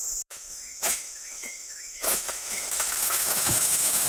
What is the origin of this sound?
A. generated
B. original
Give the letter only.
A